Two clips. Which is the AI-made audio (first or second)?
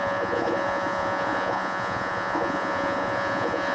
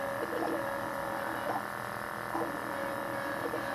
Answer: first